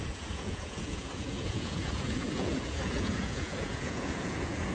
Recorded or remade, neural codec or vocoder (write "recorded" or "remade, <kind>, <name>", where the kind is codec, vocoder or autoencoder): remade, vocoder, Vocos